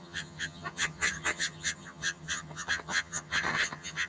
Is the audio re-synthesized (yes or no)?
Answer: yes